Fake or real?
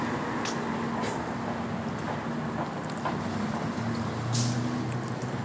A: real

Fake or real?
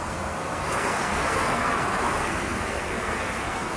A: fake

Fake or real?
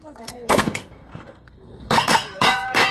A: fake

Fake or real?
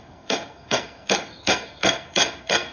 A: fake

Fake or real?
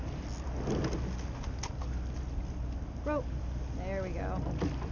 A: real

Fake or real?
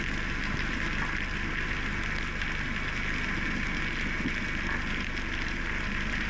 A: real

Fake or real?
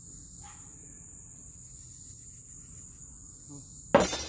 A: real